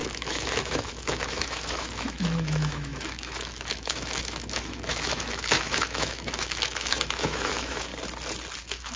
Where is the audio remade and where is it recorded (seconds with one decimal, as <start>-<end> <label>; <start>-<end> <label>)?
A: 0.0-7.9 remade; 7.9-8.6 recorded; 8.6-9.0 remade